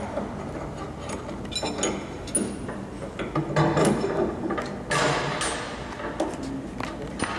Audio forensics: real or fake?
real